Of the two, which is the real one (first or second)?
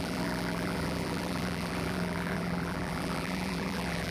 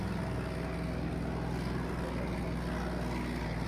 second